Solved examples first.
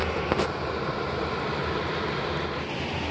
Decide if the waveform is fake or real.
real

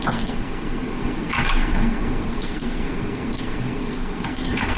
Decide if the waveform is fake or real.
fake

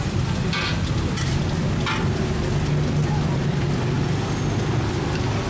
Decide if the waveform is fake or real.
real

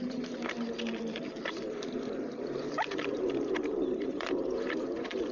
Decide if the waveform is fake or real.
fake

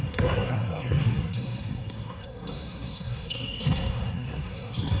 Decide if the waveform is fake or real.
fake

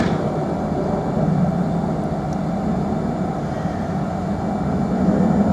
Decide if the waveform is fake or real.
real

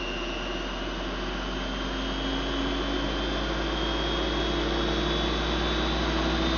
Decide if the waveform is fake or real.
real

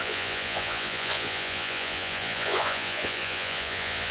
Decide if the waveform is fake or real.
fake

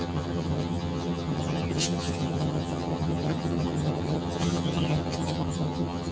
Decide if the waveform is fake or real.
fake